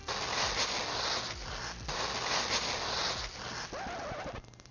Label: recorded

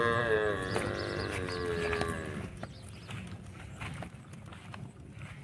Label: recorded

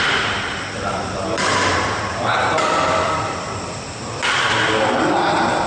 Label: remade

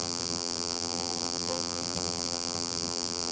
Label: remade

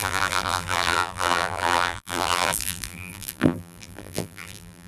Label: remade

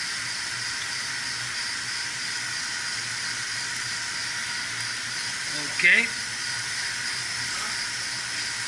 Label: recorded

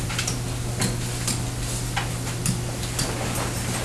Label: recorded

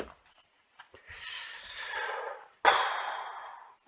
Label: recorded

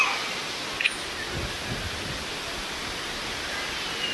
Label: recorded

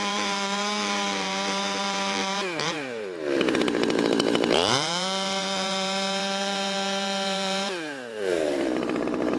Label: remade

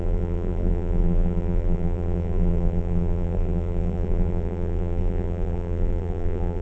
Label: remade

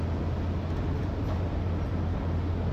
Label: recorded